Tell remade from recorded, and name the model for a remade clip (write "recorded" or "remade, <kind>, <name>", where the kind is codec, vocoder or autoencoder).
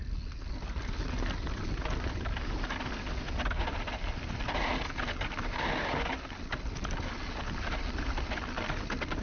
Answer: recorded